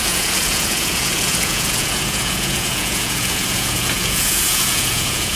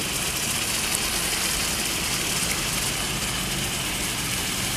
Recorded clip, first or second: second